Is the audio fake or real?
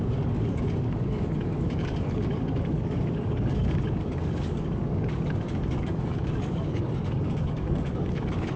fake